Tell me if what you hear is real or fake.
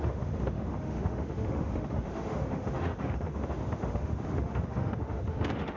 fake